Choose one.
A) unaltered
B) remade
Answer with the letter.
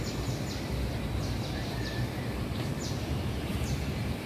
B